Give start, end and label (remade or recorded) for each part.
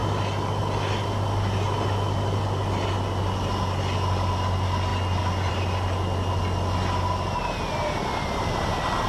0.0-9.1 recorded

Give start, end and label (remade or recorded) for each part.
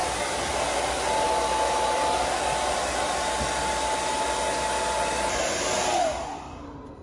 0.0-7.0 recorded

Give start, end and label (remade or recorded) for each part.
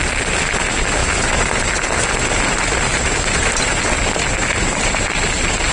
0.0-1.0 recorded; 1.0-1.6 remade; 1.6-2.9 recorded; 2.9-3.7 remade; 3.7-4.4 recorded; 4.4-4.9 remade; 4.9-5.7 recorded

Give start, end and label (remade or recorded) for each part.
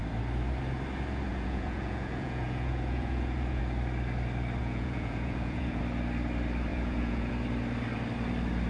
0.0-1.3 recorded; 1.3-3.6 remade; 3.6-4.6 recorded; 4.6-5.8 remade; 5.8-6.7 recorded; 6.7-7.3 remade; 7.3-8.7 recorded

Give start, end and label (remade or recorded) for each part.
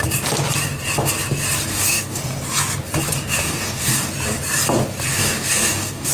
0.0-1.7 recorded; 1.7-2.2 remade; 2.2-3.4 recorded; 3.4-4.1 remade; 4.1-5.1 recorded; 5.1-6.1 remade